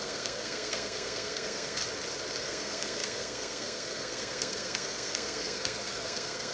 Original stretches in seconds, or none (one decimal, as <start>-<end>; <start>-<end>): 1.8-2.4